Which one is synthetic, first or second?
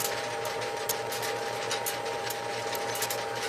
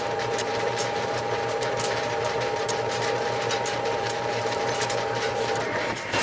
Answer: second